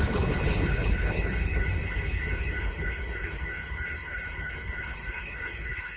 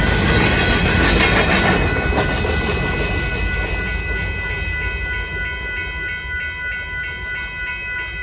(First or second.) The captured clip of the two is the second